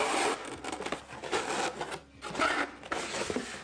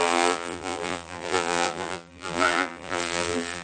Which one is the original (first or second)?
first